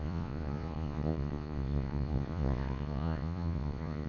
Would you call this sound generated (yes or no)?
yes